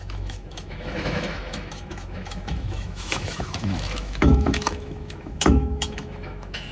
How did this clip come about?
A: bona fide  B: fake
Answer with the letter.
B